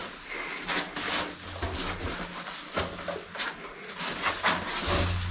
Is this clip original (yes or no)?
yes